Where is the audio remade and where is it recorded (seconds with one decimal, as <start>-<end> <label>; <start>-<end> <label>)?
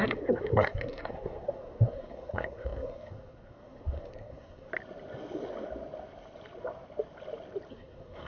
0.0-4.7 remade; 4.7-7.7 recorded; 7.7-8.3 remade